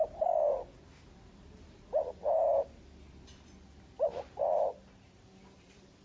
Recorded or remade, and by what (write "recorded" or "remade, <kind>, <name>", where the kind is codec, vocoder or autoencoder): remade, vocoder, BigVGAN v2